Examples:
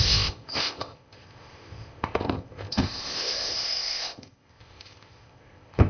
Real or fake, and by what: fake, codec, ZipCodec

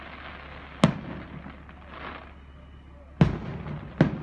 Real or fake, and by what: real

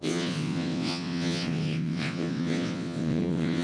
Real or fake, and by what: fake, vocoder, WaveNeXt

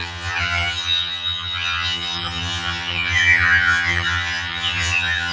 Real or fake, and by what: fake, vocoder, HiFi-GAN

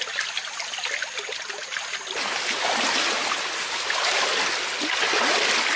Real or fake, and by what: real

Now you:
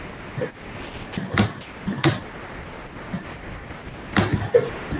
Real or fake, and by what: real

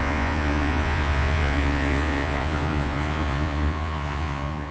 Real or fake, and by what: fake, vocoder, Vocos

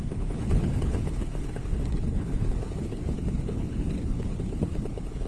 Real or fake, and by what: fake, codec, HILCodec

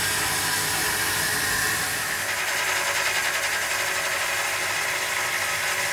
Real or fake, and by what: real